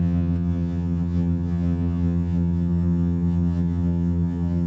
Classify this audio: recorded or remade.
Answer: remade